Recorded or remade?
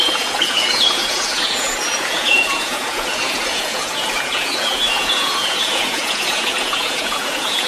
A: remade